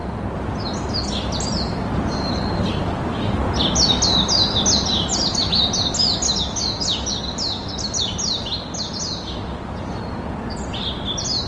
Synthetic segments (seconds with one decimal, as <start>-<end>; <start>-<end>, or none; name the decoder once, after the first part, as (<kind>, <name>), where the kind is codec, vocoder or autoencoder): none